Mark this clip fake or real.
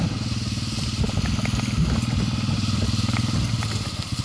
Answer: real